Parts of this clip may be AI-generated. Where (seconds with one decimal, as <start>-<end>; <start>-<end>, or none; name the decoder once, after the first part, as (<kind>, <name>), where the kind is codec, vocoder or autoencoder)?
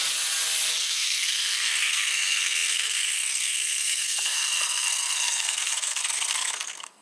0.8-7.0 (codec, SNAC)